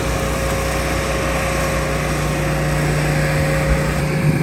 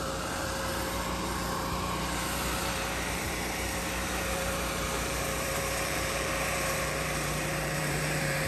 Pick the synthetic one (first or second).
second